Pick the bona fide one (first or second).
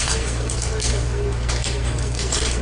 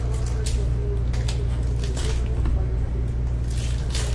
second